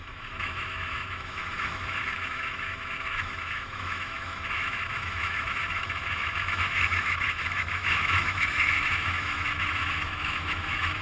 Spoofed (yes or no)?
yes